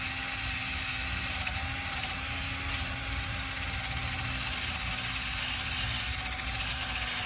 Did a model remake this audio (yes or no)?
no